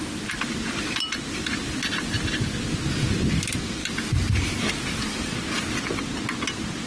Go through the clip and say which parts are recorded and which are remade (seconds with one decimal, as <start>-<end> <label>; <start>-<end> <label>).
0.0-6.9 recorded